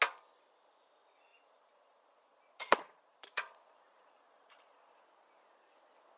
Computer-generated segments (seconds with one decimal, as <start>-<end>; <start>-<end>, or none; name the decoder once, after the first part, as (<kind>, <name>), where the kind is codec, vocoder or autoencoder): 1.3-5.0 (vocoder, Vocos)